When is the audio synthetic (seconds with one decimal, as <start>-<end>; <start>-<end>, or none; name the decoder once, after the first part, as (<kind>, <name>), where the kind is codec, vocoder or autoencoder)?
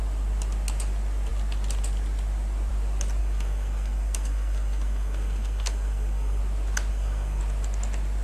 3.2-6.4 (codec, SNAC); 6.9-7.4